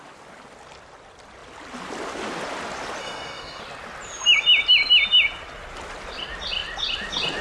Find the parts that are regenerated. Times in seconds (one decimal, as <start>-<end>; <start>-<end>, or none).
3.0-3.6